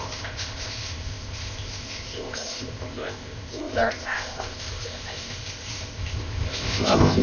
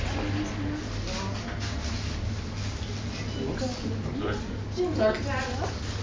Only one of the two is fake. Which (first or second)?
first